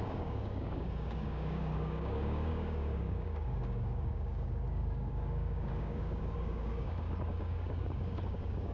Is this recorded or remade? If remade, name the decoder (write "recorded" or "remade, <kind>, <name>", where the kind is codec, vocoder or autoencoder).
remade, codec, DAC